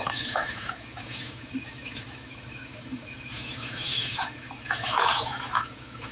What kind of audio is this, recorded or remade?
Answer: remade